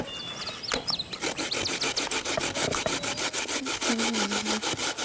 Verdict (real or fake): real